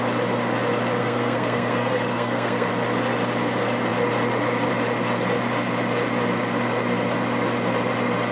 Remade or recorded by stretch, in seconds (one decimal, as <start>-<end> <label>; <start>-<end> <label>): 0.0-1.0 recorded; 1.0-2.7 remade; 2.7-8.3 recorded